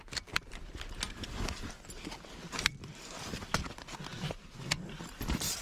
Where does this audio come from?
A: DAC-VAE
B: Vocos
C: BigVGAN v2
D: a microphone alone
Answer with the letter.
D